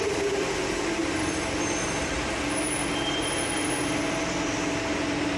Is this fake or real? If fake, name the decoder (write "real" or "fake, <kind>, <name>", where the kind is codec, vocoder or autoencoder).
real